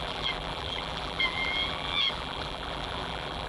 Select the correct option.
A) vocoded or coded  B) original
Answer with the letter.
A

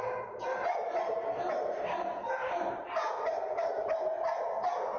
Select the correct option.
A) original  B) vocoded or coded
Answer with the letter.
A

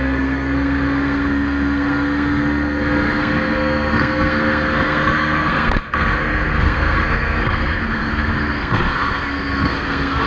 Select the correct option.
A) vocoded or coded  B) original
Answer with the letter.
A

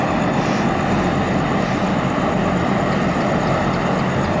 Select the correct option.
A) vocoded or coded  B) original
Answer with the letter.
B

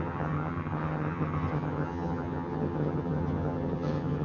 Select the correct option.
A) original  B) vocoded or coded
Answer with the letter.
B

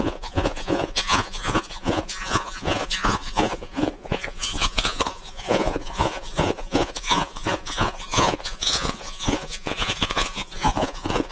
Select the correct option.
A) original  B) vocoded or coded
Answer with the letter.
B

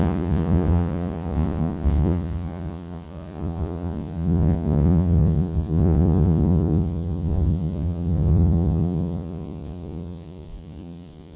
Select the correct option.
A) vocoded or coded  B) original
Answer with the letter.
A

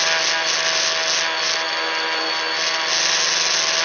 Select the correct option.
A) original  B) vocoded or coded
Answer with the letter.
A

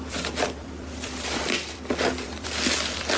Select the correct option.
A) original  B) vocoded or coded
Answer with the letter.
B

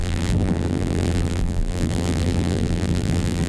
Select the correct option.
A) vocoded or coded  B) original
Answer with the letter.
A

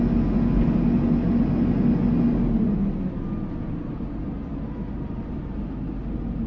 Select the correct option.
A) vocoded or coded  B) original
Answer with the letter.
B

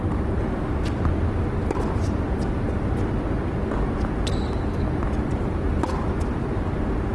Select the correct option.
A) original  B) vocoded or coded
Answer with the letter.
A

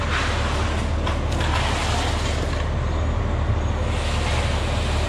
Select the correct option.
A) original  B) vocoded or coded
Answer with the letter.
A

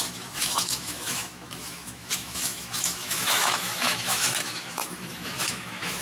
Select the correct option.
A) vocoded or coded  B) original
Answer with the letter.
A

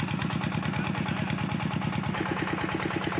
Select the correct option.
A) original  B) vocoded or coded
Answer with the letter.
A